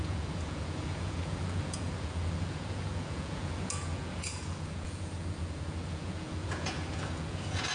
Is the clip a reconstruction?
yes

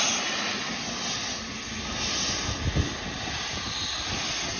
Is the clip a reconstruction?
no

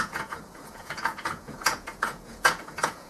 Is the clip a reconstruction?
yes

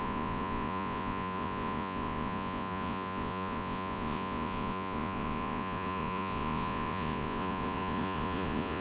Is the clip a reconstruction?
yes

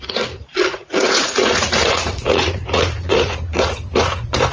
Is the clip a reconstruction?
yes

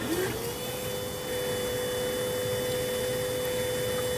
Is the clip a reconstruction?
no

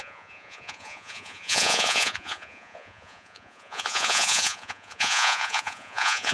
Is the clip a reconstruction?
yes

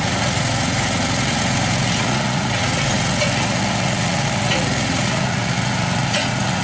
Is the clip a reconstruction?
yes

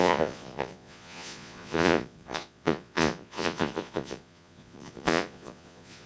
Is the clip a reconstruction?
yes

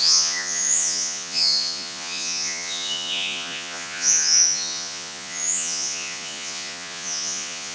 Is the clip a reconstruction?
yes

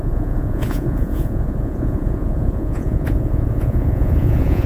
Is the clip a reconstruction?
yes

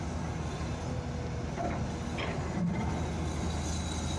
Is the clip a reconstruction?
no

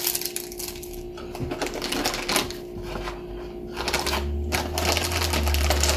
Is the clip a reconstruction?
no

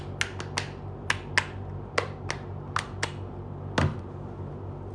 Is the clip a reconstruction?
no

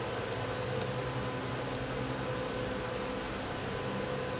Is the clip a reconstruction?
no